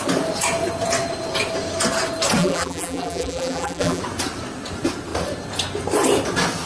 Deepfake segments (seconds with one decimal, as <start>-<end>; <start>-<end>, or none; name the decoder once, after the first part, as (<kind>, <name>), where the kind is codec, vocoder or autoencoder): 2.4-4.0 (vocoder, BigVGAN v2)